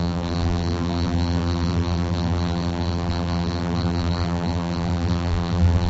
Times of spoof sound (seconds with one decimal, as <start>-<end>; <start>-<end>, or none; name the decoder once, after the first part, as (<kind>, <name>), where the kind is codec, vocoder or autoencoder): 0.0-5.9 (vocoder, BigVGAN v2)